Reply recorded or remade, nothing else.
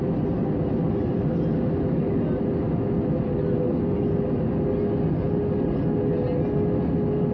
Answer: recorded